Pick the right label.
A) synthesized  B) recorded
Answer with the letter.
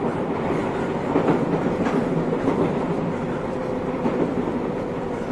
A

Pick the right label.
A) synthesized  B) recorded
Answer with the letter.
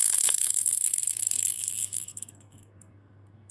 A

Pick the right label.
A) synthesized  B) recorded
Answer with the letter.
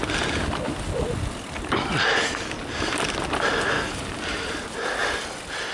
B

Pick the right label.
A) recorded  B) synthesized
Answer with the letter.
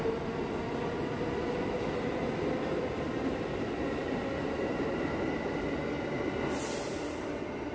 A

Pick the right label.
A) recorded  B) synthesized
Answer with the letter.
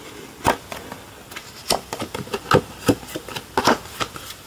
A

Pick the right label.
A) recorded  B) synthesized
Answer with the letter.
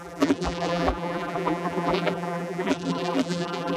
B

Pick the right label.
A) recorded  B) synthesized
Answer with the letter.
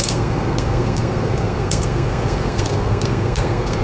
B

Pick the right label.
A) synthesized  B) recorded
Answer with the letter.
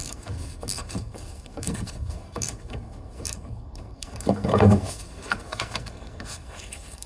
A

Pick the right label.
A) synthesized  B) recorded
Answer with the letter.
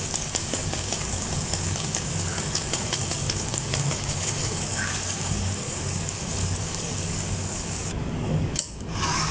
A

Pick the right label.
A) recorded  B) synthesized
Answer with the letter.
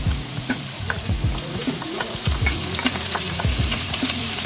B